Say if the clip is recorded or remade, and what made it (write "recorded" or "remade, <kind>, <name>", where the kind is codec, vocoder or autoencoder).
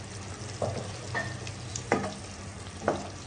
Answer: recorded